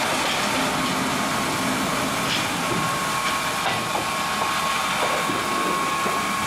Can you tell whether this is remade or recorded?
recorded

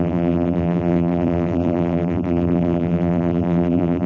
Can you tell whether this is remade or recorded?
remade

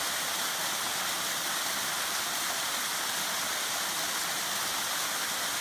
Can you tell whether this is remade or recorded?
recorded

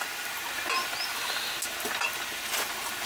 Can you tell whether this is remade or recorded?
recorded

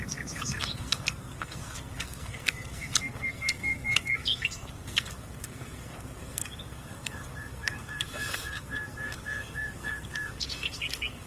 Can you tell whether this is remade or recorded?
remade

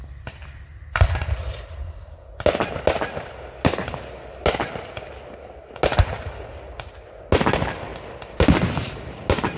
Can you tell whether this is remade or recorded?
recorded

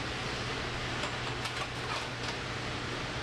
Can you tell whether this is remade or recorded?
recorded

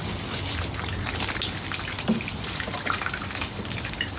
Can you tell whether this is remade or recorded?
recorded